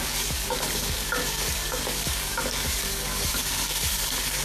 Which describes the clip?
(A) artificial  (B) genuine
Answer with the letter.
A